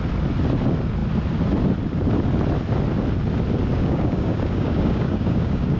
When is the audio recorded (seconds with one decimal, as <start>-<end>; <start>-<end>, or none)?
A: 0.0-3.7